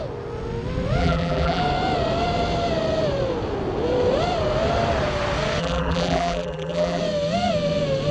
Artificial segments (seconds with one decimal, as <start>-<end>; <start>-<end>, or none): 1.0-1.6; 5.6-7.0